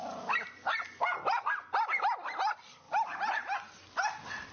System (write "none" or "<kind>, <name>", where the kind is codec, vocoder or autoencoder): none